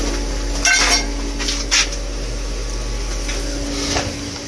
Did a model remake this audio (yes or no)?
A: no